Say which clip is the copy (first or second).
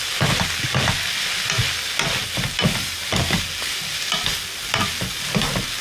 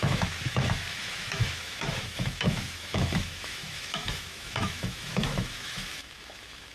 second